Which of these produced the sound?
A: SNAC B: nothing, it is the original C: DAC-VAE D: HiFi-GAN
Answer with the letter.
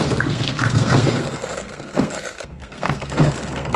A